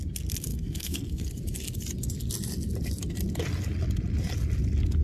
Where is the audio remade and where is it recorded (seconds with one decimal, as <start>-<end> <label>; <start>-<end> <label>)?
0.0-0.5 recorded; 0.5-1.3 remade; 1.3-5.0 recorded